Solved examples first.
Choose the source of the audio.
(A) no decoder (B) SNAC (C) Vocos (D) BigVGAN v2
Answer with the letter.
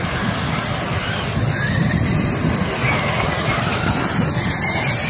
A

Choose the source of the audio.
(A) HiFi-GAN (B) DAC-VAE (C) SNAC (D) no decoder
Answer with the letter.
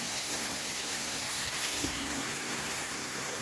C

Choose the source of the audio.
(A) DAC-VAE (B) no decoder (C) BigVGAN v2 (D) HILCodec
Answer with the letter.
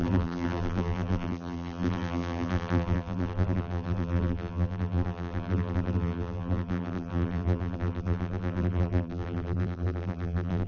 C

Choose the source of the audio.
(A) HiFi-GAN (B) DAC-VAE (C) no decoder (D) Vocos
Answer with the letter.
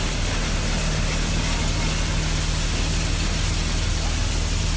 C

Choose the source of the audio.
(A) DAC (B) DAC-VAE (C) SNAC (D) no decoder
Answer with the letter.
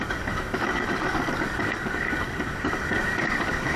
A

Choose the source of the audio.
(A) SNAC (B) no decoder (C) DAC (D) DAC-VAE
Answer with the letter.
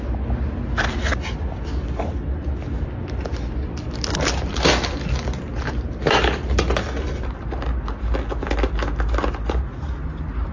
B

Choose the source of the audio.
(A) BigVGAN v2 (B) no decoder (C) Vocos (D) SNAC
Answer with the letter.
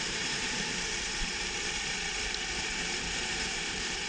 A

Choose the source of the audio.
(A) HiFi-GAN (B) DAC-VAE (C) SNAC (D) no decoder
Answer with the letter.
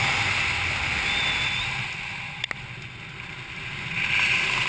D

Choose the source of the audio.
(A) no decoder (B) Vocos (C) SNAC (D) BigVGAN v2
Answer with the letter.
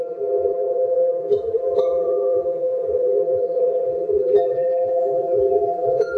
D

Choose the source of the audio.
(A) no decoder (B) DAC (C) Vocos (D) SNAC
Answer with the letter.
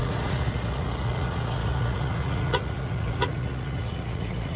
C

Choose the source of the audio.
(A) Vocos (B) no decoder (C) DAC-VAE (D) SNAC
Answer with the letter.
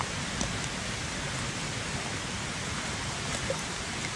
B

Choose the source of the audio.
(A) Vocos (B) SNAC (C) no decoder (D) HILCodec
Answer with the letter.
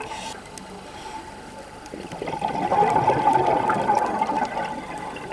C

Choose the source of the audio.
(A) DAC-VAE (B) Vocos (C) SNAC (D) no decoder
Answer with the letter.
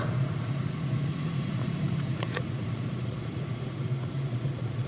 B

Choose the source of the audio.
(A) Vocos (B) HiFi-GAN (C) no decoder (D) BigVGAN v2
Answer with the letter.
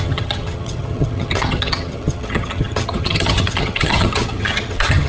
B